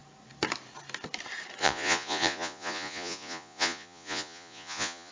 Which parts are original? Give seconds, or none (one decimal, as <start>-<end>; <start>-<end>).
0.0-1.6